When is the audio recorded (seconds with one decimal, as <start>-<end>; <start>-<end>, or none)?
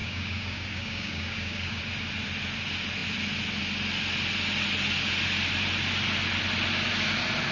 1.8-7.5